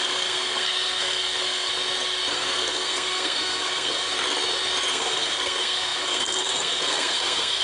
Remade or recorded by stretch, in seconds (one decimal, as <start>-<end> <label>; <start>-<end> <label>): 0.0-1.7 remade; 1.7-2.3 recorded; 2.3-4.1 remade; 4.1-4.9 recorded; 4.9-7.6 remade